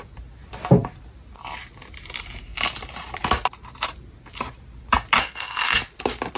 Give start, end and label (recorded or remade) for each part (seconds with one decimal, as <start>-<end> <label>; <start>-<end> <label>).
0.0-5.2 recorded; 5.2-5.8 remade; 5.8-6.4 recorded